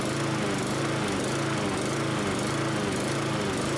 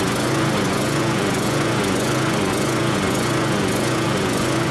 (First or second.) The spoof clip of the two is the second